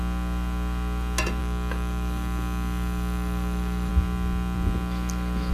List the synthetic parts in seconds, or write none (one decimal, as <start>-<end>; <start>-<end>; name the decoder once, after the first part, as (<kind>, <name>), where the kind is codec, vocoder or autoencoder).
1.4-3.9 (autoencoder, DAC-VAE)